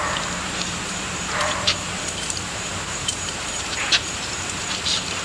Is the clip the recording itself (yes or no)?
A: no